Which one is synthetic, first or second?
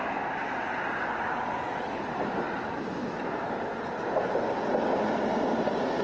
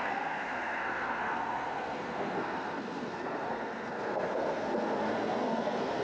second